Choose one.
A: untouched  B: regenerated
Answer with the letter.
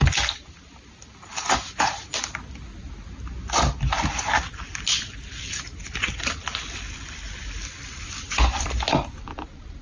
A